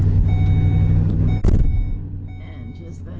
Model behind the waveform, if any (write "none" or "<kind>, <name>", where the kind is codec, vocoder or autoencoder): none